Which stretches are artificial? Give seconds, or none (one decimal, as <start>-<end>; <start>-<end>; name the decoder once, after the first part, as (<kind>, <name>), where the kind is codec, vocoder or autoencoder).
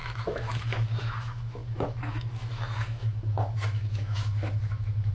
0.0-5.1 (autoencoder, DAC-VAE)